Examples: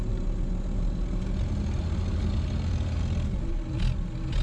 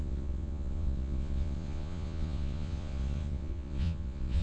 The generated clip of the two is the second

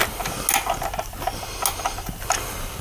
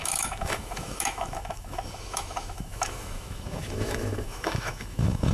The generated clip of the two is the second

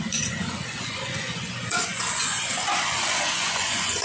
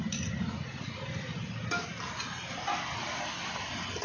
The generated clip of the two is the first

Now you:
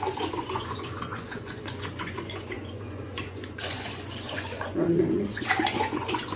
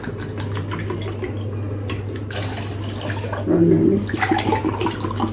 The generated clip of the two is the first